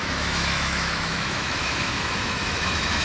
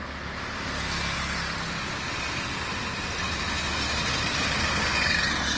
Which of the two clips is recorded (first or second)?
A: second